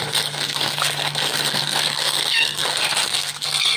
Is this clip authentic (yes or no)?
no